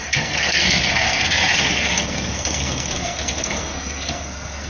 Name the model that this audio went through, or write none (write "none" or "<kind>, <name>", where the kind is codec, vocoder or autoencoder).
codec, SNAC